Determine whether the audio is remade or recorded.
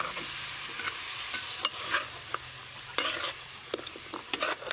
recorded